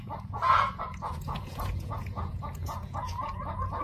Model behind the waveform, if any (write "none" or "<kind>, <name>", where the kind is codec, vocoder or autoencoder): vocoder, Vocos